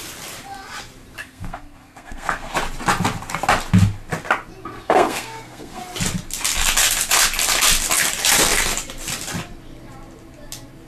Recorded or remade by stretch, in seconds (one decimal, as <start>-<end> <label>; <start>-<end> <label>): 0.0-1.2 recorded; 1.2-2.5 remade; 2.5-4.6 recorded; 4.6-5.8 remade; 5.8-10.9 recorded